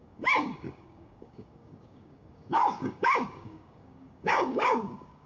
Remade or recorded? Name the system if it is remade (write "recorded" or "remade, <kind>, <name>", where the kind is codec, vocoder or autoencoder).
remade, codec, DAC